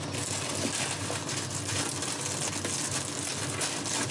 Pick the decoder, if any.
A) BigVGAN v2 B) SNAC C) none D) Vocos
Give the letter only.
C